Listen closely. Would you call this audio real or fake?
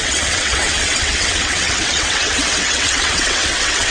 fake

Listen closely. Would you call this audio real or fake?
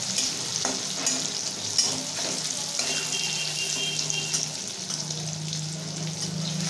real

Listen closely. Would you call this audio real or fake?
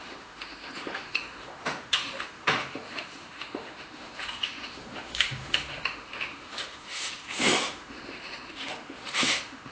fake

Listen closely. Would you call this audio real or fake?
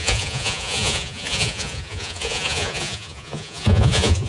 fake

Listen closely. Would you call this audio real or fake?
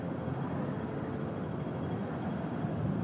real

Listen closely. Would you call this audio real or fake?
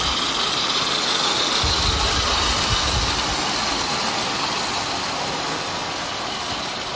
real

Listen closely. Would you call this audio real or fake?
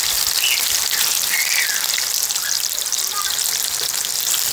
real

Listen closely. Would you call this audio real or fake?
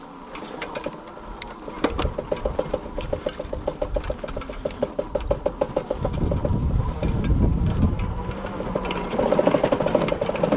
real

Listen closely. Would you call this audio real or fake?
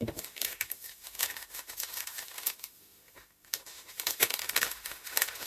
fake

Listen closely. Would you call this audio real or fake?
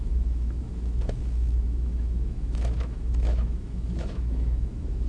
fake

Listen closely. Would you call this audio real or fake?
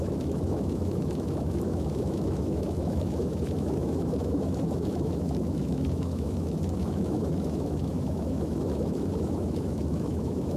fake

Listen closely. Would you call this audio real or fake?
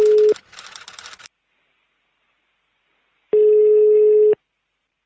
real